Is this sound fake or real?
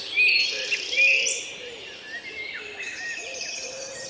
real